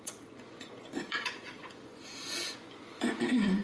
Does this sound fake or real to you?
fake